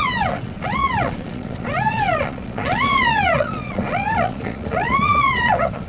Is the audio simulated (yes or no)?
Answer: yes